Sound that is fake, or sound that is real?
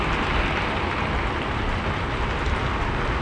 real